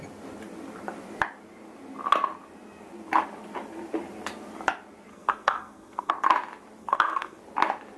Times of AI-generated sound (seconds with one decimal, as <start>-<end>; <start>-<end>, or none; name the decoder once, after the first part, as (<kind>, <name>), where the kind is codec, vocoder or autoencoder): 5.1-6.1 (codec, SNAC); 6.8-7.4